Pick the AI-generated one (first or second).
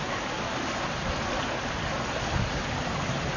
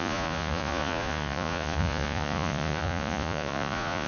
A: second